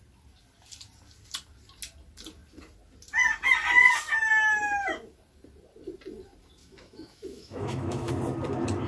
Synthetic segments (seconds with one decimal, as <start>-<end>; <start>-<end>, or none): 6.6-8.1